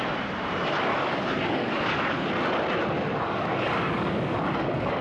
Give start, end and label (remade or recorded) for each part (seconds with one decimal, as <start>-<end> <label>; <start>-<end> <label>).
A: 0.0-0.9 recorded; 0.9-2.3 remade; 2.3-3.1 recorded; 3.1-5.0 remade